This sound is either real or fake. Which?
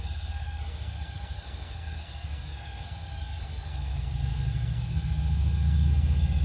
fake